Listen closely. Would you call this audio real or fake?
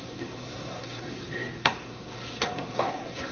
fake